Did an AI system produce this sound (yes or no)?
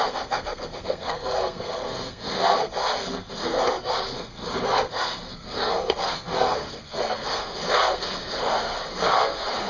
yes